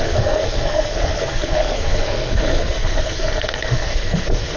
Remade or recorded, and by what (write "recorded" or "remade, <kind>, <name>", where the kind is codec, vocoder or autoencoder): remade, codec, SNAC